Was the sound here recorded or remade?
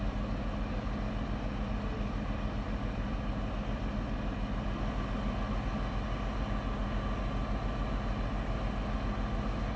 recorded